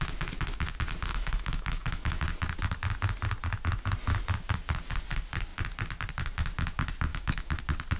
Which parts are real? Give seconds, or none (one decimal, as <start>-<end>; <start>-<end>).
0.0-1.1; 2.2-7.1; 7.6-8.0